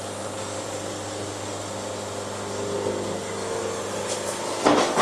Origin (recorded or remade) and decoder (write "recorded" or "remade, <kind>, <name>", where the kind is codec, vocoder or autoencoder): recorded